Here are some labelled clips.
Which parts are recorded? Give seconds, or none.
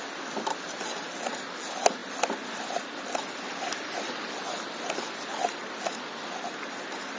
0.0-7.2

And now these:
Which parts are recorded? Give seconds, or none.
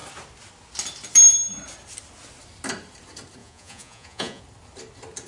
0.0-3.4; 4.4-5.3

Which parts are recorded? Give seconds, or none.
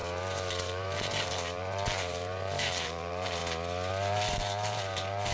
3.4-3.9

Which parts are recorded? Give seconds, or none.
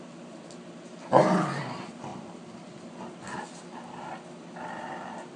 0.0-5.4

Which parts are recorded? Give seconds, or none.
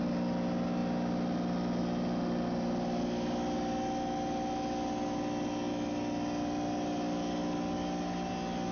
0.0-8.7